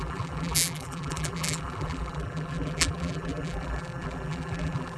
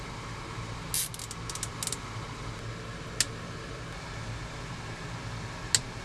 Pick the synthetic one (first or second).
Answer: first